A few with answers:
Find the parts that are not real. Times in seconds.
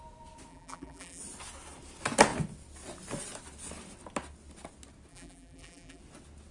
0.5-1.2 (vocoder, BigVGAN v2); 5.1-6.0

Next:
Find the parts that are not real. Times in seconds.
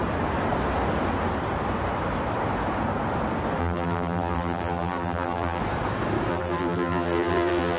3.6-5.6 (vocoder, BigVGAN v2); 6.3-7.8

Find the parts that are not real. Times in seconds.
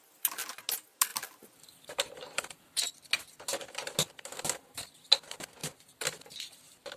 1.1-2.8 (vocoder, BigVGAN v2); 5.6-6.3